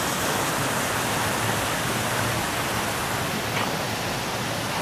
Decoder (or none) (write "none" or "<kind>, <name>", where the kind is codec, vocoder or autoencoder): none